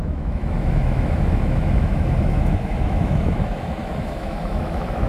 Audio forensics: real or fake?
fake